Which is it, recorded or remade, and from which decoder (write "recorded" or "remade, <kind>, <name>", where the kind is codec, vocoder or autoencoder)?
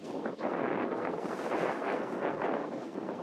remade, codec, SNAC